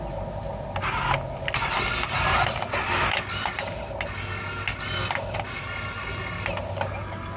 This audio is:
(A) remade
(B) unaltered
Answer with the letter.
B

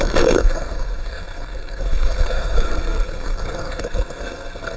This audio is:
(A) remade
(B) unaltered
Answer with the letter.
A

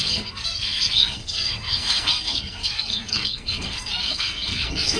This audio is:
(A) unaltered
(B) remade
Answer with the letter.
B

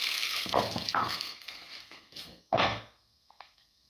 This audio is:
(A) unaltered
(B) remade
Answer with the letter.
B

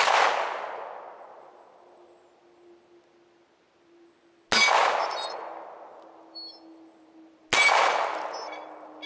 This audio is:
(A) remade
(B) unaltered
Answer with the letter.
B